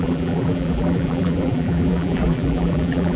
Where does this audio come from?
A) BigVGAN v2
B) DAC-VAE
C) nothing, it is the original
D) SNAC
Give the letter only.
A